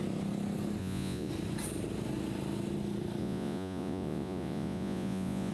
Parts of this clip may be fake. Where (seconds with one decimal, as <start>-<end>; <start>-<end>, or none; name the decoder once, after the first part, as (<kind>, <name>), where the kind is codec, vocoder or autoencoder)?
0.8-1.3 (vocoder, Vocos); 3.2-5.5